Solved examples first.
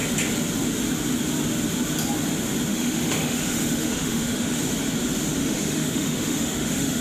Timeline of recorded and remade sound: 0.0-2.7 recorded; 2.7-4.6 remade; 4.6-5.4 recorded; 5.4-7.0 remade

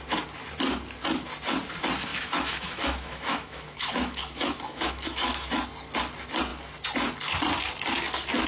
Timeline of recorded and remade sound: 0.0-2.1 recorded; 2.1-5.5 remade; 5.5-8.5 recorded

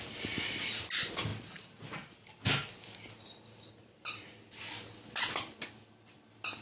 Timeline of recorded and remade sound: 0.0-6.6 recorded

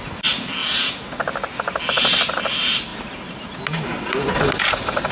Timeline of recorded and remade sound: 0.0-5.1 recorded

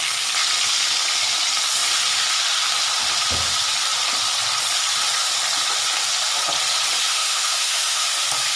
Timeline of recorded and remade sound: 0.0-7.1 recorded; 7.1-8.1 remade; 8.1-8.6 recorded